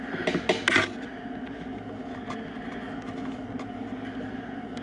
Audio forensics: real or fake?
real